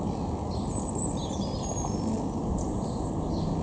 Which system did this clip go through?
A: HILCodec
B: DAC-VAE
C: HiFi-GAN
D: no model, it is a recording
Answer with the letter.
D